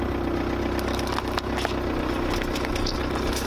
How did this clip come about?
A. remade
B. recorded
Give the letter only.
B